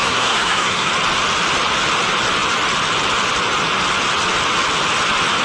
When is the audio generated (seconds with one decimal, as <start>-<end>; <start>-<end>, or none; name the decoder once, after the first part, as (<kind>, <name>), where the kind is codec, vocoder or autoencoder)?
0.0-0.9 (codec, SNAC)